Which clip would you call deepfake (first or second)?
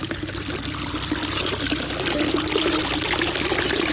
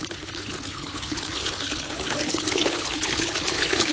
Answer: second